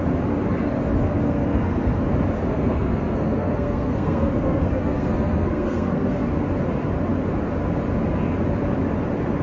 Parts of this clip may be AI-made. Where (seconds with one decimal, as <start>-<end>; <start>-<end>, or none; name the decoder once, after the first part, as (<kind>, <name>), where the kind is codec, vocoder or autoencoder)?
1.0-2.0 (codec, SNAC); 2.5-6.3